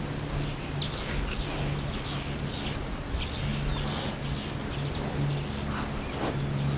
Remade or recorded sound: recorded